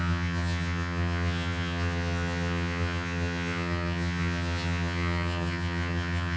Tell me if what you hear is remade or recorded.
remade